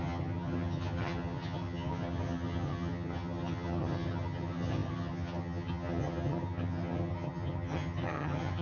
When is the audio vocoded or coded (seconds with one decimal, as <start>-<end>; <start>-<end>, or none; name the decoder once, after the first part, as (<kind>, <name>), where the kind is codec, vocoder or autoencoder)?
0.0-8.6 (vocoder, HiFi-GAN)